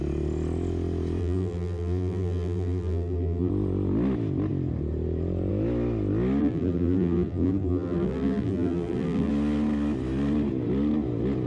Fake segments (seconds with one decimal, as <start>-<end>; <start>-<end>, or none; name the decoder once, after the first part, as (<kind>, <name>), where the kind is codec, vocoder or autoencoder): 1.2-3.5 (vocoder, BigVGAN v2); 6.4-9.3